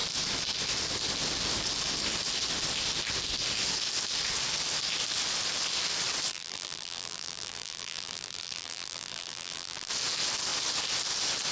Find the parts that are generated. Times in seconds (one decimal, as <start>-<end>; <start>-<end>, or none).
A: 6.3-9.9